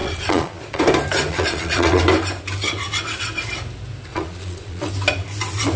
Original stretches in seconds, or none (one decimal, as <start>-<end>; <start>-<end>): 0.8-1.3; 2.0-4.1; 4.9-5.8

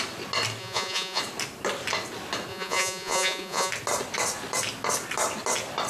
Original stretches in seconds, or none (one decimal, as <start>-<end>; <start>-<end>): 0.0-0.6; 1.2-2.5; 3.7-5.9

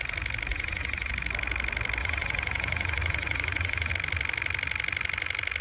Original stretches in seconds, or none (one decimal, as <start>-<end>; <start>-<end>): 0.0-0.5; 1.1-2.0; 3.9-5.6